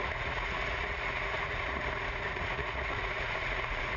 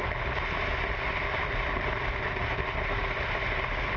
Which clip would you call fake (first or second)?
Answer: first